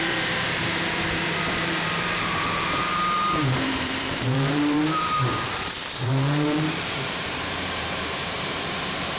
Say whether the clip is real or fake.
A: fake